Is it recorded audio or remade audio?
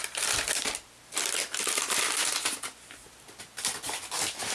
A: recorded